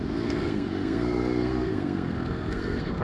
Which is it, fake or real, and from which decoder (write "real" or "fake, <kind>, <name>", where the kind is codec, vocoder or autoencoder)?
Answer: fake, codec, SNAC